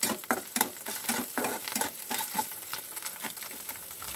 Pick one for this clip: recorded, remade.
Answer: remade